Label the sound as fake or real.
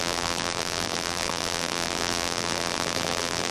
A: fake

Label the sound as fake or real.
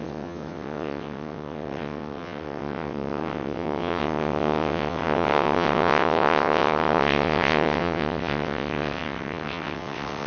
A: fake